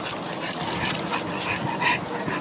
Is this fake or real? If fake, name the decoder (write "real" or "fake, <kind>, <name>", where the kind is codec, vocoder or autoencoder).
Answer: real